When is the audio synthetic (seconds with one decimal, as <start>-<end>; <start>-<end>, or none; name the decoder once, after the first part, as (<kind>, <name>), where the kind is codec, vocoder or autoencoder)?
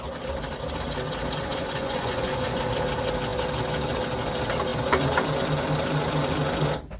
1.5-2.6 (vocoder, Vocos)